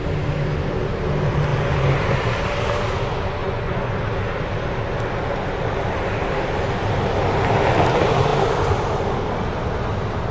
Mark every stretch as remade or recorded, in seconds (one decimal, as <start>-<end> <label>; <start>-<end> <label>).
0.0-3.4 recorded; 3.4-3.9 remade; 3.9-10.3 recorded